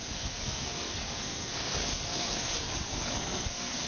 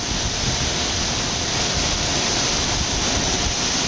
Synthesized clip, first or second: first